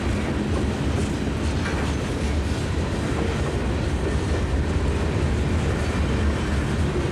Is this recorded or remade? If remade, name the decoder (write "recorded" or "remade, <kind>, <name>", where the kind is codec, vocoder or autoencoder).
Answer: recorded